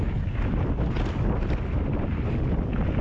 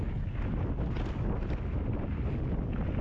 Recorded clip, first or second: second